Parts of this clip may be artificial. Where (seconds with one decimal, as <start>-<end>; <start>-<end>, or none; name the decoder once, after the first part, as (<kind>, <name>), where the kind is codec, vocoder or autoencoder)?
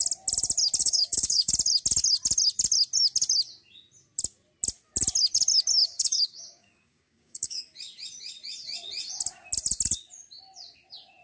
0.8-1.5 (codec, DAC); 5.8-7.6